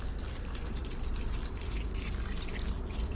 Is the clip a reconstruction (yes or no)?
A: no